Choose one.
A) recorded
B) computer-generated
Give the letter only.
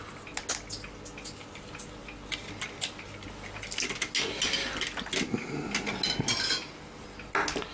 A